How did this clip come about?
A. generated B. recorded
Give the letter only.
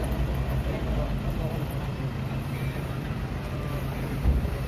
A